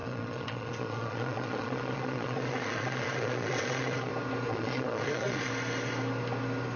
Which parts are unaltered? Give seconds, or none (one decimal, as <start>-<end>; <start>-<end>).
4.1-4.5; 5.5-6.8